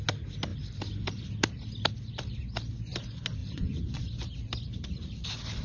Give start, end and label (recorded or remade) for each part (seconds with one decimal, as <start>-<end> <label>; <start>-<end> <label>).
0.0-3.4 recorded; 3.4-4.0 remade; 4.0-5.6 recorded